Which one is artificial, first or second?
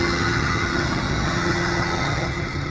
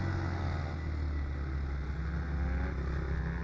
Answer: first